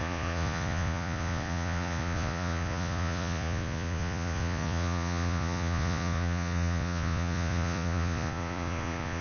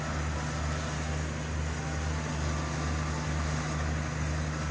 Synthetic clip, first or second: first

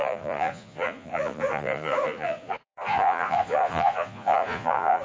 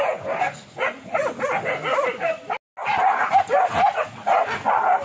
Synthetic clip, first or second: first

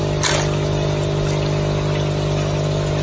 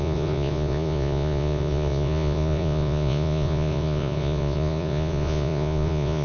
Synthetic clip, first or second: second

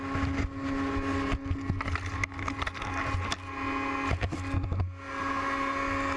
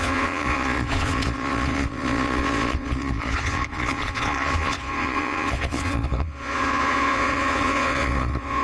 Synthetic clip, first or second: second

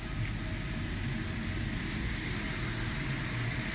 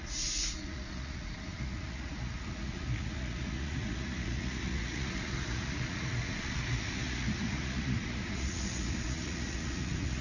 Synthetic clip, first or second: second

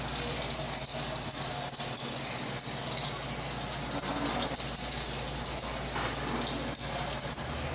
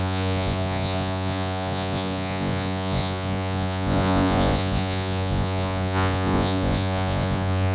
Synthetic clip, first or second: second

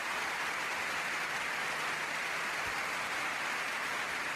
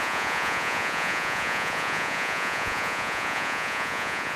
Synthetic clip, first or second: second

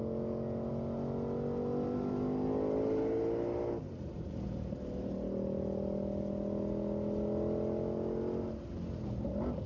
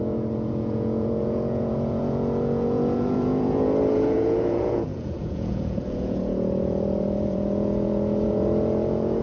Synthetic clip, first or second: second